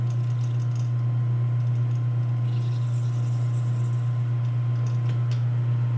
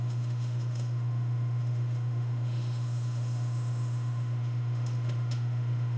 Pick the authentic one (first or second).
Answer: first